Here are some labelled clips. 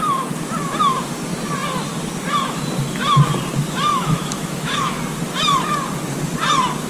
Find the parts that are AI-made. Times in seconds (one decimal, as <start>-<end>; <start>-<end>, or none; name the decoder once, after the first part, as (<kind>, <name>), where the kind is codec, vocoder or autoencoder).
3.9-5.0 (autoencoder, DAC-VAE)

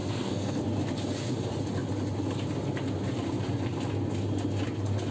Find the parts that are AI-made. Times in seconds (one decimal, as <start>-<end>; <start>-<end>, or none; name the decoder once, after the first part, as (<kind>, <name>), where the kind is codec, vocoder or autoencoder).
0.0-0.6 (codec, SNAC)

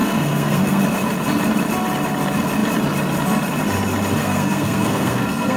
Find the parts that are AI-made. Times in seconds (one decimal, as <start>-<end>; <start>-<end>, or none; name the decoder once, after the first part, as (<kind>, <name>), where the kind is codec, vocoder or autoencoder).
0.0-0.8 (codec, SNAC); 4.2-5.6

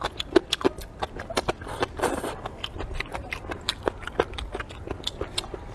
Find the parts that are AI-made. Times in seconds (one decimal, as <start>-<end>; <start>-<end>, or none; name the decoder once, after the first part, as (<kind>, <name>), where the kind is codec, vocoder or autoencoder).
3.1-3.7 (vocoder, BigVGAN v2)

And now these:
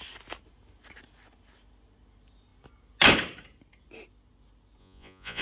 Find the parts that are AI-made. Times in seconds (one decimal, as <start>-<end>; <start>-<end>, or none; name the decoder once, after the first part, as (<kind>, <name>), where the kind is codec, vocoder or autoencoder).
4.8-5.4 (vocoder, Vocos)

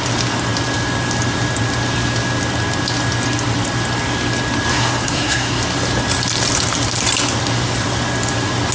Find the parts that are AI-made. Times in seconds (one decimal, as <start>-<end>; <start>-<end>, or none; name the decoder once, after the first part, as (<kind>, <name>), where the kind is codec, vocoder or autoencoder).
4.7-5.6 (codec, SNAC)

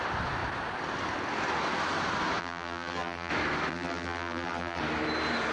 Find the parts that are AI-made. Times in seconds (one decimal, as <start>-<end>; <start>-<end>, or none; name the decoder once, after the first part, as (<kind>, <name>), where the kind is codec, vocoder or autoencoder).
2.4-3.3 (vocoder, BigVGAN v2); 3.7-4.8

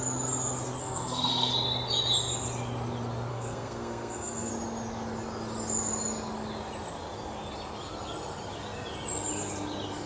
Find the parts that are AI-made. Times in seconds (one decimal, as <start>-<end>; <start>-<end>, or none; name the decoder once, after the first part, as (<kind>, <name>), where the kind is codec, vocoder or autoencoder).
0.8-1.5 (codec, SNAC); 3.3-4.5